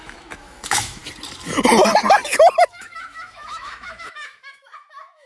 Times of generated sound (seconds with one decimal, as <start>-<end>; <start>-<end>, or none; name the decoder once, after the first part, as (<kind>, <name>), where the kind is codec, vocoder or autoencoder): 0.0-1.0 (autoencoder, DAC-VAE); 2.6-5.3